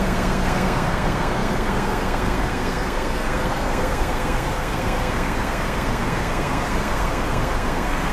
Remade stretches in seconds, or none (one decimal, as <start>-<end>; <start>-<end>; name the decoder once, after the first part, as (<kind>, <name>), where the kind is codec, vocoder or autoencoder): 0.0-8.1 (codec, SNAC)